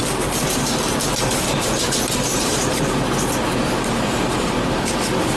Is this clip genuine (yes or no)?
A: no